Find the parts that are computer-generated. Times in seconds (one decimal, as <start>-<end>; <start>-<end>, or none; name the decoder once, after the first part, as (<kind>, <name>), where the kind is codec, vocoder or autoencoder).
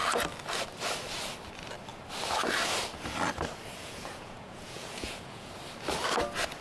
3.8-5.5 (vocoder, Vocos)